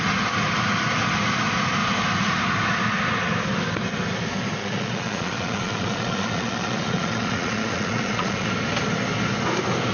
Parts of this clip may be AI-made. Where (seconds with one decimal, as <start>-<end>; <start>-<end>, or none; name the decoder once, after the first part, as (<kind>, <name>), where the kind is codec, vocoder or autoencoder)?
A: 4.6-8.5 (vocoder, Vocos)